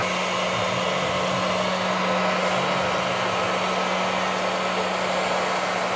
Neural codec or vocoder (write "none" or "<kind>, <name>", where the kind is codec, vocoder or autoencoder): none